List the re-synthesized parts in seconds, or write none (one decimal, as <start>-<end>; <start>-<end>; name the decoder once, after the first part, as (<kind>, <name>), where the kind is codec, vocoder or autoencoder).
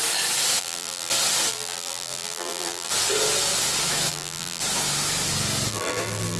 0.6-1.1 (vocoder, BigVGAN v2); 1.5-2.9; 4.1-4.6; 5.7-6.4